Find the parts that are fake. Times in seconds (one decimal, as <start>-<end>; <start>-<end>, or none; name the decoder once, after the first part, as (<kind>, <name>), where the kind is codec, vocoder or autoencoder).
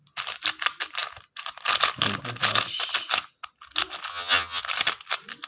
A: 4.1-4.6 (vocoder, HiFi-GAN)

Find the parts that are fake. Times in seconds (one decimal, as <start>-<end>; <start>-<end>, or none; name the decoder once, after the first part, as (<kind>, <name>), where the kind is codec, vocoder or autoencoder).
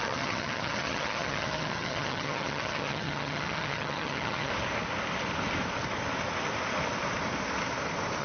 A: 0.0-4.5 (vocoder, HiFi-GAN)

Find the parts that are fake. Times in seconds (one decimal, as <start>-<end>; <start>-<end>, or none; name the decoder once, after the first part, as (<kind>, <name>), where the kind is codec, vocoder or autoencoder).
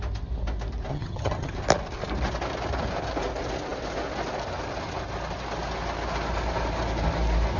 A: 0.9-1.5 (vocoder, HiFi-GAN)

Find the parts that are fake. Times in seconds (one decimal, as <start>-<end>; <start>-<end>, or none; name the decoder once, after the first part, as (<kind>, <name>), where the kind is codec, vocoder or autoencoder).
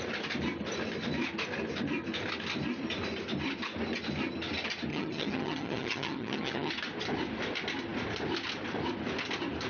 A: 4.9-6.7 (vocoder, HiFi-GAN)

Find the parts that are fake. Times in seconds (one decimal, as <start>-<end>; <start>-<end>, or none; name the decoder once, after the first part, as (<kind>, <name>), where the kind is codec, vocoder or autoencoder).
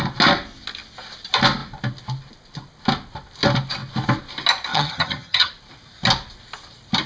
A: 4.7-5.5 (vocoder, HiFi-GAN)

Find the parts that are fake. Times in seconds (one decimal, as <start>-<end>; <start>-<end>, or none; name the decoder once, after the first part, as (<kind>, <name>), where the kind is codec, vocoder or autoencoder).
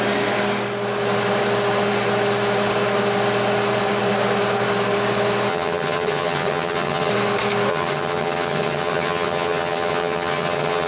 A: 5.5-7.1 (vocoder, HiFi-GAN); 7.7-10.9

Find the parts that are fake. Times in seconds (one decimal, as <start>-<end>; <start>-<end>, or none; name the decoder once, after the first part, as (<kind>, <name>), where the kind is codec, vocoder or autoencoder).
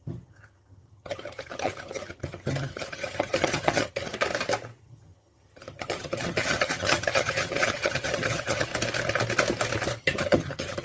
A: 0.0-4.1 (vocoder, HiFi-GAN); 4.8-8.7; 10.0-10.8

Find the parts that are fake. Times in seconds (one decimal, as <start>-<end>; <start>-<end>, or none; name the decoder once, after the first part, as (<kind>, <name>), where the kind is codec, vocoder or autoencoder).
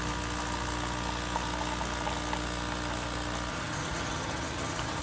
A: 3.5-5.0 (vocoder, HiFi-GAN)